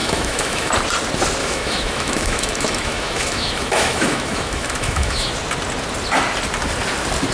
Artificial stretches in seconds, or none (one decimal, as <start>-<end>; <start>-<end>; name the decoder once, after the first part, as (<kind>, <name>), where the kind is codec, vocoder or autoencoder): 0.0-0.7 (autoencoder, DAC-VAE); 1.4-5.3